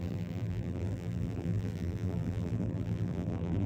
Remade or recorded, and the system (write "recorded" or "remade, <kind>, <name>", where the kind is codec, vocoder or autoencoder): remade, vocoder, BigVGAN v2